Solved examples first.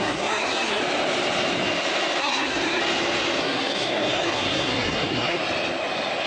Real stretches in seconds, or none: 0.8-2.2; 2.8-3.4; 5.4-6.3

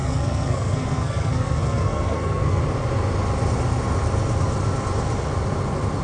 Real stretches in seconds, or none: 2.6-6.0

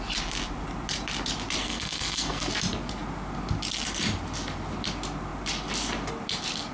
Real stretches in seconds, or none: 0.0-1.6; 2.5-6.7